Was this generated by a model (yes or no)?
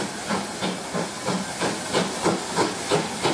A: no